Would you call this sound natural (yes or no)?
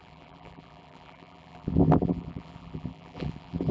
no